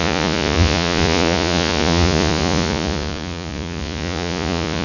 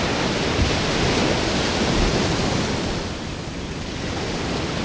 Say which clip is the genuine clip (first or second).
second